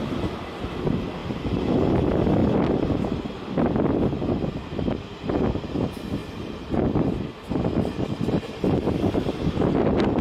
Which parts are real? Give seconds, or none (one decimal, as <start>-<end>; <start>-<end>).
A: 0.0-6.2; 7.3-10.2